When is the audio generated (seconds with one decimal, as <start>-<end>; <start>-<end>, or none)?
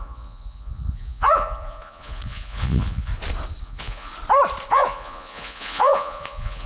0.0-3.1; 3.6-4.1; 4.7-6.7